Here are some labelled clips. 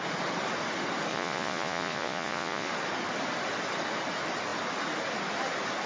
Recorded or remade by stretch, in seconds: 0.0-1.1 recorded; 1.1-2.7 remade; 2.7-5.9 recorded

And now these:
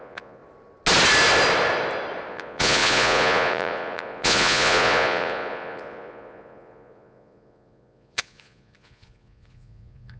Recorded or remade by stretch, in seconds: 0.0-0.4 remade; 0.4-2.3 recorded; 2.3-10.2 remade

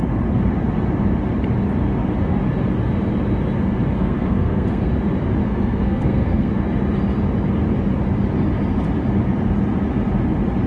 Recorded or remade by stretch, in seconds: 0.0-4.0 recorded; 4.0-4.9 remade; 4.9-5.4 recorded; 5.4-6.5 remade; 6.5-10.7 recorded

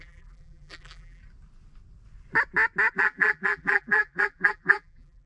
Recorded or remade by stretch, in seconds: 0.0-1.2 remade; 1.2-2.9 recorded; 2.9-5.3 remade

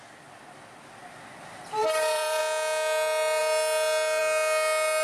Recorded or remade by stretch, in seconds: 0.0-1.8 recorded; 1.8-2.4 remade; 2.4-5.0 recorded

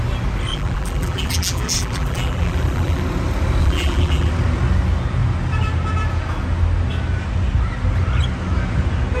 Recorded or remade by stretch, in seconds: 0.0-0.5 recorded; 0.5-3.0 remade; 3.0-3.6 recorded; 3.6-4.3 remade; 4.3-9.2 recorded

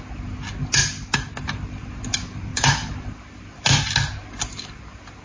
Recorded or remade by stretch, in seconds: 0.0-5.2 recorded